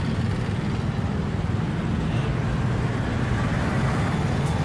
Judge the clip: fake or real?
real